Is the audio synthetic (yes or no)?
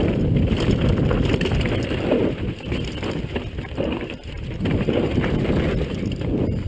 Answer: no